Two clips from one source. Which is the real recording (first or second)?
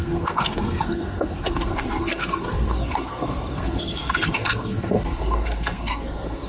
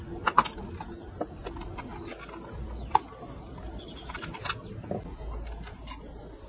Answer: second